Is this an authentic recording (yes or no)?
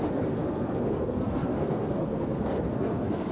no